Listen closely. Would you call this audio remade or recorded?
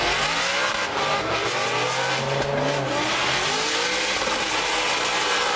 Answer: recorded